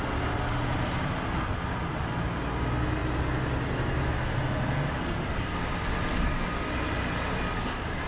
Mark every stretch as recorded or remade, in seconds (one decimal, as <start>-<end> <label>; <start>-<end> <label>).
0.0-8.1 recorded